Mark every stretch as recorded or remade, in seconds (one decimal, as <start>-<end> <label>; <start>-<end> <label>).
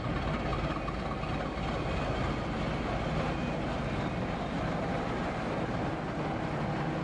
0.0-7.0 recorded